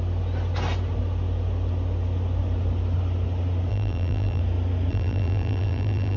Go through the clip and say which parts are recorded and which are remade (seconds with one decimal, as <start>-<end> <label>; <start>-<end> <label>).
0.0-3.7 recorded; 3.7-4.4 remade; 4.4-4.9 recorded; 4.9-6.2 remade